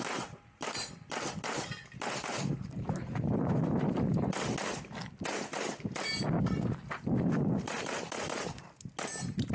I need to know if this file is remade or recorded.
recorded